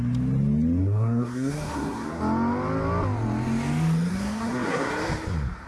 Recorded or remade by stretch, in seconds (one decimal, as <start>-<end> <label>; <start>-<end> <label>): 0.0-0.8 recorded; 0.8-2.2 remade; 2.2-4.1 recorded; 4.1-4.9 remade; 4.9-5.7 recorded